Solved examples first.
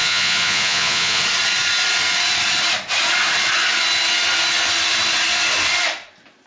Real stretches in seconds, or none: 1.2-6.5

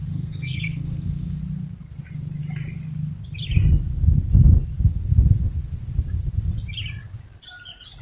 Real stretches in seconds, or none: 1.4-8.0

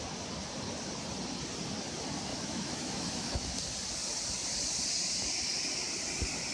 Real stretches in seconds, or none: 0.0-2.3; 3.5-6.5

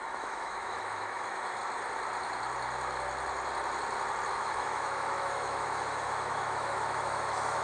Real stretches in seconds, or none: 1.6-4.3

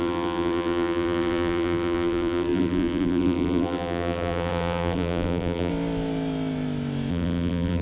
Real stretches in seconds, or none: 5.7-7.1

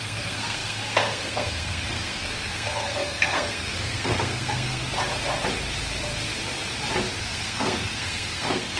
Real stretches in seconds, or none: 4.8-7.2

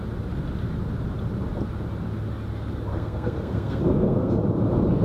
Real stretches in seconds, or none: 0.0-2.9; 4.3-5.0

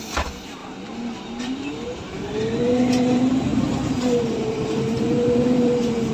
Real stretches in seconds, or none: 0.6-1.4